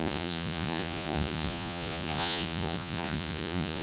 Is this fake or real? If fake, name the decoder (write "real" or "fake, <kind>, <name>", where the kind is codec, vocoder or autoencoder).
fake, vocoder, Vocos